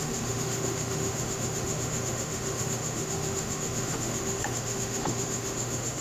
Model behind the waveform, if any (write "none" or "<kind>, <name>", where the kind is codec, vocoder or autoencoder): autoencoder, DAC-VAE